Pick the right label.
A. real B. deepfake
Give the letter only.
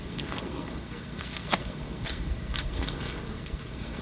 B